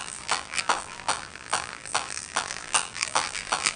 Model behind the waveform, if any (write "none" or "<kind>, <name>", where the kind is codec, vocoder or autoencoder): vocoder, BigVGAN v2